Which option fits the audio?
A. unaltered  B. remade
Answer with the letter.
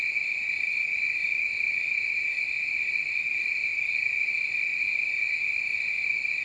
A